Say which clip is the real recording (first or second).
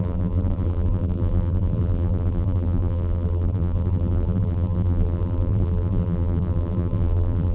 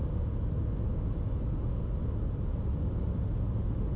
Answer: second